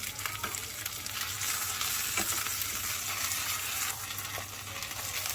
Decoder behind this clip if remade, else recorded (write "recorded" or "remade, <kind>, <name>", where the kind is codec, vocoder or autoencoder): recorded